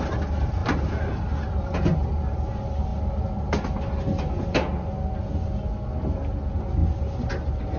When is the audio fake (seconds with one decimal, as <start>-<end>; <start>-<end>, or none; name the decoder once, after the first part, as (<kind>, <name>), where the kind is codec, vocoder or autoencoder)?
none